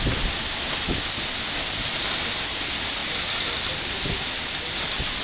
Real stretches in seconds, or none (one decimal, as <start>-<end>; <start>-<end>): 0.0-5.2